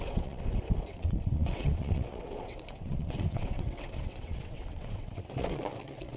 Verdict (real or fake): fake